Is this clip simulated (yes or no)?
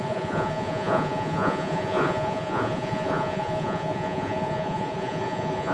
yes